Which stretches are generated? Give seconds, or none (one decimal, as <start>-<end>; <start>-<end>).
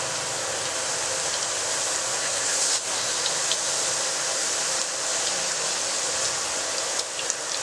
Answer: 2.2-3.1